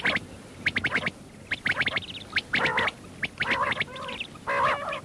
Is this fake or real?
real